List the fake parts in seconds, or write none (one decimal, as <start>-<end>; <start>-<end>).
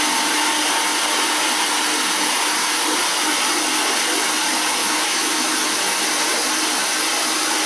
4.8-6.0